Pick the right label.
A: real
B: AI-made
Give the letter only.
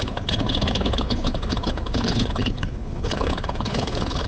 B